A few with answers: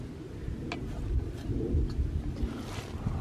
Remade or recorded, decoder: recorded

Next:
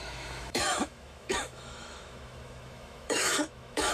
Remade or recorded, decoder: remade, autoencoder, DAC-VAE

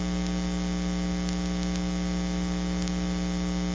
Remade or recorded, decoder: recorded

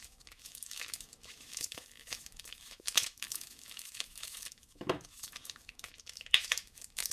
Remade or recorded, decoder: remade, autoencoder, DAC-VAE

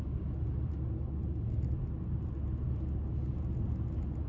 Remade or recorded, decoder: recorded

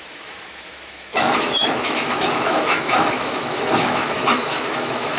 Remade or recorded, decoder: remade, autoencoder, DAC-VAE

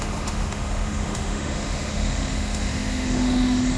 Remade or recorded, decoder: remade, autoencoder, DAC-VAE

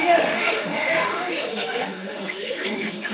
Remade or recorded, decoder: remade, autoencoder, DAC-VAE